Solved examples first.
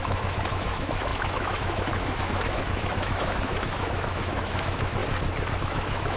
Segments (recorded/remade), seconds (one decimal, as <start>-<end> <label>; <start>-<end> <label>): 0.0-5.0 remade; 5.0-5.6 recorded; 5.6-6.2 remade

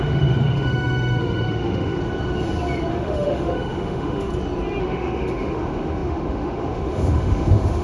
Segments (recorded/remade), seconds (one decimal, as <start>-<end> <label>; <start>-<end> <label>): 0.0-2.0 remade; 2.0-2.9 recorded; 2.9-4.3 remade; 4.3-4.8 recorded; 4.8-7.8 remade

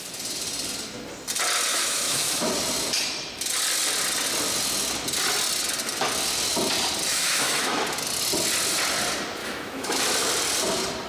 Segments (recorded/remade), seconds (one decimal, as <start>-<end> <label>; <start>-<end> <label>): 0.0-1.7 recorded; 1.7-2.5 remade; 2.5-7.1 recorded; 7.1-7.8 remade; 7.8-9.4 recorded; 9.4-10.0 remade; 10.0-11.1 recorded

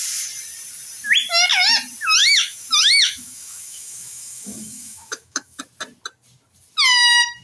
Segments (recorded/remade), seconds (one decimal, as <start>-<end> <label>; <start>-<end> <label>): 0.0-2.2 recorded; 2.2-5.6 remade; 5.6-7.4 recorded

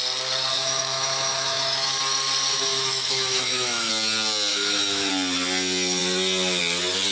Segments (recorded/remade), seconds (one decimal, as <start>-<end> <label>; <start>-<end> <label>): 0.0-0.5 recorded; 0.5-2.0 remade; 2.0-2.5 recorded; 2.5-3.9 remade; 3.9-4.5 recorded; 4.5-5.1 remade; 5.1-7.1 recorded

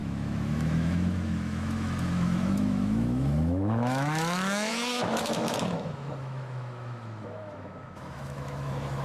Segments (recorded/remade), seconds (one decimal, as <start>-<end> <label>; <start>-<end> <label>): 0.0-9.0 remade